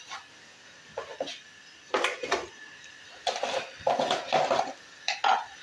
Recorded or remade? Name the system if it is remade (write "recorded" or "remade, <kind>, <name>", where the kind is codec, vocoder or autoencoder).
recorded